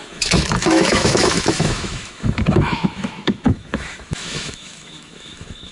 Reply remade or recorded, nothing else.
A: remade